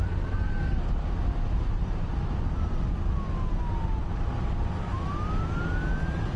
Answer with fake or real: real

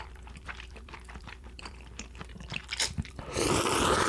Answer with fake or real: fake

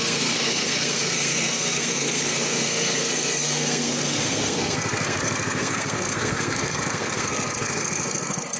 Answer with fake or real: fake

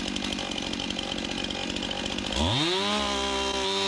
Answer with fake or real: real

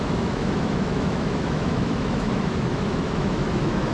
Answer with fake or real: fake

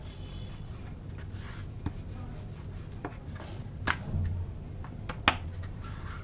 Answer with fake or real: real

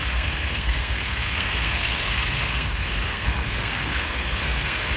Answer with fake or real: fake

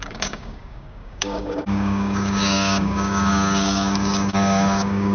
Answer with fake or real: fake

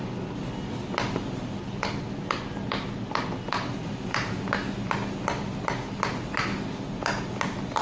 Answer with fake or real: real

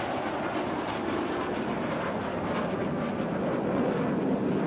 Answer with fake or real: real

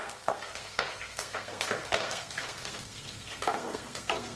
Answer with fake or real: fake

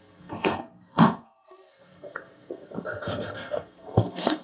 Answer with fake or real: fake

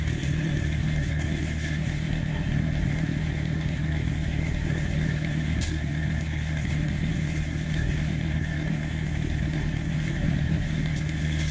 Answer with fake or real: fake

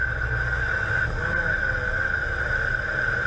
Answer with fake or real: real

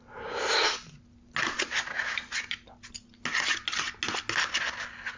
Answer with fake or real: real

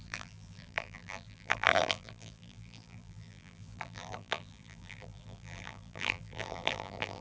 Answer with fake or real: fake